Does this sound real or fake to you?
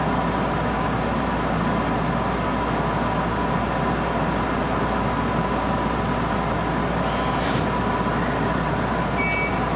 real